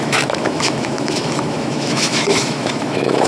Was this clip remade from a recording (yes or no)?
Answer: yes